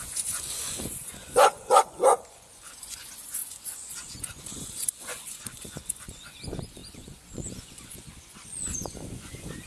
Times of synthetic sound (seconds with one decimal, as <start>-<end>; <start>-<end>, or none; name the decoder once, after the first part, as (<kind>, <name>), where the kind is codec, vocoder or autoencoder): 0.0-9.7 (vocoder, Vocos)